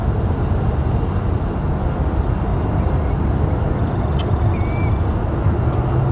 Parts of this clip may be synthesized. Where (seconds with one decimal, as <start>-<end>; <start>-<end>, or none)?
none